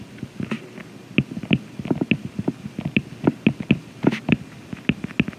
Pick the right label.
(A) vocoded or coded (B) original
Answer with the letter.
B